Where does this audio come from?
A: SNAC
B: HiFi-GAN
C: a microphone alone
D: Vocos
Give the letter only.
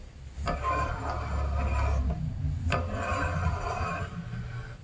C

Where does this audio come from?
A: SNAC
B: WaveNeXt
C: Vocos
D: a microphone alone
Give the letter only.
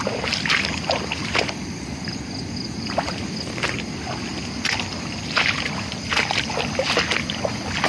D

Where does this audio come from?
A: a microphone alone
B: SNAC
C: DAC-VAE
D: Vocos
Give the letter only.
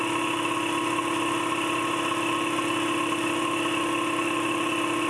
A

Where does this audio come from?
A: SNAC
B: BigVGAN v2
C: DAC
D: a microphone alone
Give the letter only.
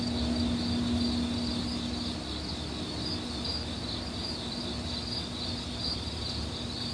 D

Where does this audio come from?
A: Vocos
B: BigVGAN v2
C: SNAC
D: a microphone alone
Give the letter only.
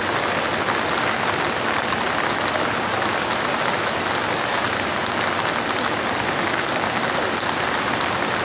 D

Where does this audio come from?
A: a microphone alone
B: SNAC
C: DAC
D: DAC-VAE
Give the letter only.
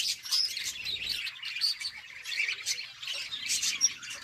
A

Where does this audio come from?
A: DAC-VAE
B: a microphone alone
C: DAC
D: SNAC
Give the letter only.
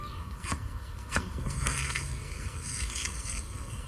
D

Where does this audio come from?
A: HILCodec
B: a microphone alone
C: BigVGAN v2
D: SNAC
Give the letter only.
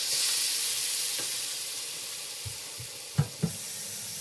B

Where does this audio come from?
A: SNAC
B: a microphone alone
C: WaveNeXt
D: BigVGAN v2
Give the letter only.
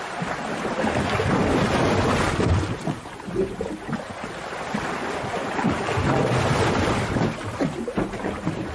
B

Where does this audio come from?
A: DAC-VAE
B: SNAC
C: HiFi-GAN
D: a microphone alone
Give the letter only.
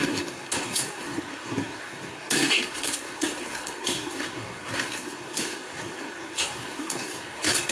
B